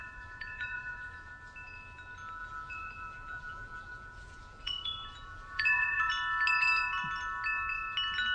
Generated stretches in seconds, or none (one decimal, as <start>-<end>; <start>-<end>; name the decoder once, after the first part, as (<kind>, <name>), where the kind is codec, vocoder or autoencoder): 0.0-1.3 (vocoder, Vocos); 2.4-6.1